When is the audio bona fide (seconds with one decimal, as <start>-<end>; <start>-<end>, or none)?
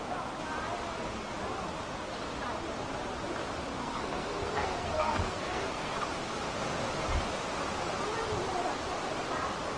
0.0-3.7; 6.0-9.8